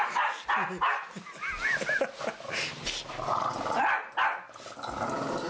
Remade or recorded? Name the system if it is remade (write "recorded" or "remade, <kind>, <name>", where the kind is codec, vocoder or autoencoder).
recorded